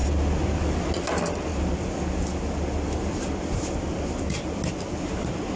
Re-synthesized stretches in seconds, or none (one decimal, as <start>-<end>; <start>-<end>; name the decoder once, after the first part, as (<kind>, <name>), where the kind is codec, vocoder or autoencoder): none

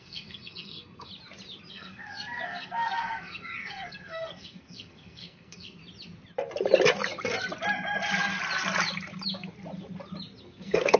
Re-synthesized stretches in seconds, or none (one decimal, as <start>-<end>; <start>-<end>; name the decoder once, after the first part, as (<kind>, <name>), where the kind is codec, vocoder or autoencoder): 0.0-1.1 (codec, SNAC); 1.7-5.8; 10.4-11.0